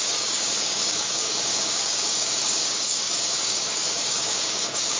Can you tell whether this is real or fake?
fake